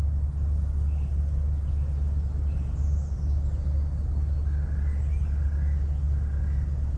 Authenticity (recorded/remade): recorded